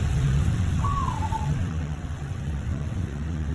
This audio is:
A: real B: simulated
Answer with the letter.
B